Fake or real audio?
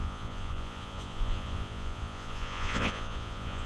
fake